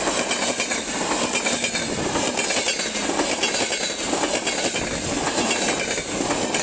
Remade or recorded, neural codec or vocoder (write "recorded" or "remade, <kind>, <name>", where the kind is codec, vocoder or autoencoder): recorded